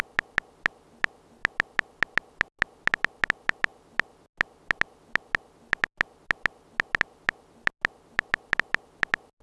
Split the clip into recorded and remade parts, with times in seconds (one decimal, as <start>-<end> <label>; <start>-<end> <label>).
0.0-9.4 recorded